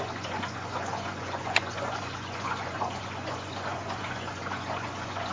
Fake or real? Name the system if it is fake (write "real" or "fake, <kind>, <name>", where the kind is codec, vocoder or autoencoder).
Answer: fake, vocoder, Vocos